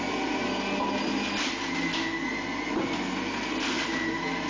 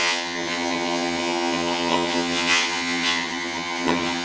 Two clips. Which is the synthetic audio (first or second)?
second